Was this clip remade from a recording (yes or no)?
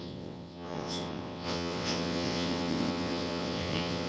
yes